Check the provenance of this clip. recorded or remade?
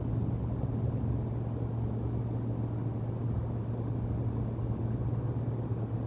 recorded